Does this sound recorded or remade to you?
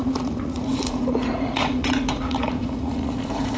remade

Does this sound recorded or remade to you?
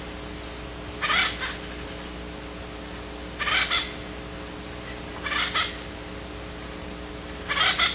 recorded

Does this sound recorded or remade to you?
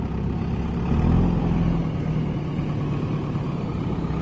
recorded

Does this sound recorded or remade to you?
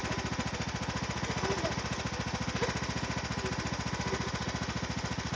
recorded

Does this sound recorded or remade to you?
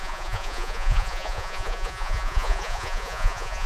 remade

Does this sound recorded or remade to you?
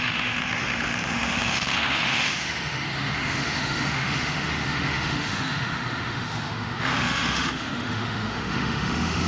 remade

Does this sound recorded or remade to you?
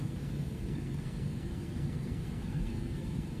remade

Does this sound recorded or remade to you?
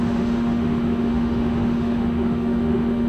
remade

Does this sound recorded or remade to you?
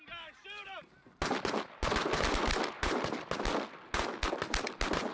recorded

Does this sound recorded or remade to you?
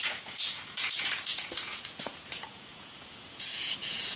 remade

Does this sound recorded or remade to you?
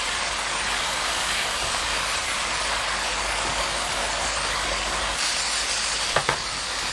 remade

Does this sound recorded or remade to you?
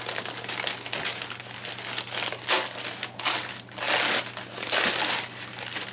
recorded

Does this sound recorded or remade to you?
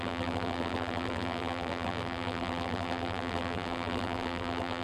remade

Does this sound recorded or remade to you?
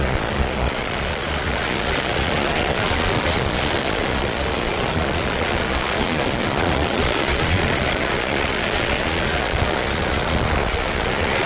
remade